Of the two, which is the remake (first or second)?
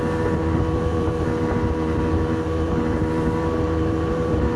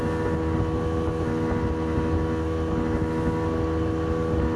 first